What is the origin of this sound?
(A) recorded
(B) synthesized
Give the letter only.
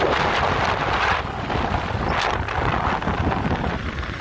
A